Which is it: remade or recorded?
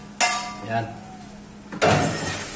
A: recorded